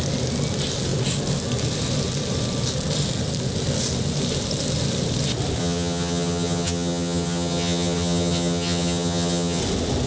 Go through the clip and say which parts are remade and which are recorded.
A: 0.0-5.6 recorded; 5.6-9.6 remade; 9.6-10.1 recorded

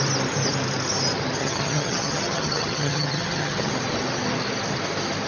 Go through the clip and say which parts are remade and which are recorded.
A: 0.0-1.4 recorded; 1.4-3.7 remade; 3.7-5.3 recorded

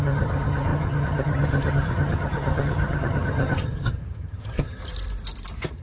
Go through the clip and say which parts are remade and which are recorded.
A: 0.0-4.8 remade; 4.8-5.8 recorded